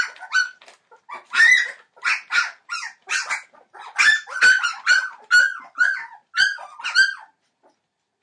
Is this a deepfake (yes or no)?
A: no